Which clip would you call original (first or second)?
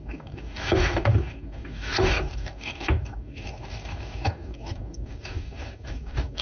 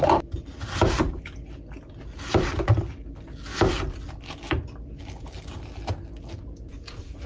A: second